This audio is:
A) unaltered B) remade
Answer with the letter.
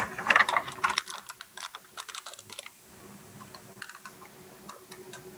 A